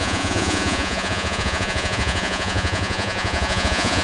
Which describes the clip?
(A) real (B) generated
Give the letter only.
B